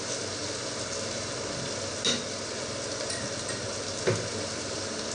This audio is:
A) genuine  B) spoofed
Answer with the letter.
A